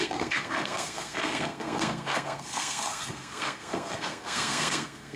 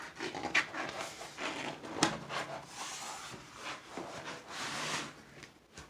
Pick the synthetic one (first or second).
first